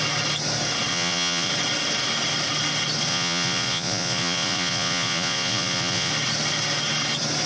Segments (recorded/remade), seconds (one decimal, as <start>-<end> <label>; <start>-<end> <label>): 0.0-0.9 recorded; 0.9-1.5 remade; 1.5-3.1 recorded; 3.1-6.1 remade; 6.1-7.5 recorded